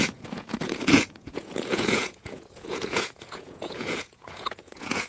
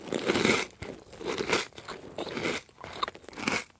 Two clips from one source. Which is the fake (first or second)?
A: first